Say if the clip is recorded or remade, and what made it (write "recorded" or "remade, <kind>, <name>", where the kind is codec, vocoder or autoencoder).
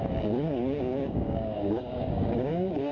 remade, codec, DAC